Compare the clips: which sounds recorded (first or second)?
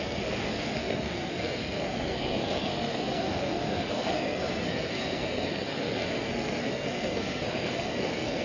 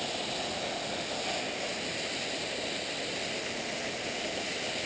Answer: second